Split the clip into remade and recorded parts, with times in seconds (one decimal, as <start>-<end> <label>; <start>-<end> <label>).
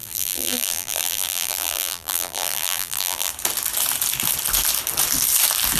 0.0-3.3 remade; 3.3-5.8 recorded